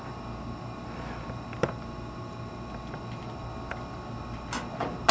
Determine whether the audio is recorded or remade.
recorded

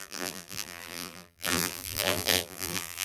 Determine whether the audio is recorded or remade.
remade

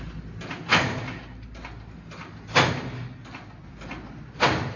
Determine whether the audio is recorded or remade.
recorded